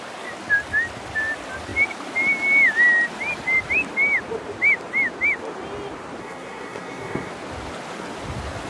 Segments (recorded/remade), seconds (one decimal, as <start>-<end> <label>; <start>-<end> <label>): 0.0-6.2 recorded; 6.2-7.3 remade; 7.3-8.7 recorded